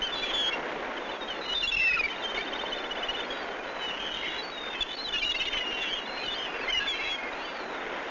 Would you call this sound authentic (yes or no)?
yes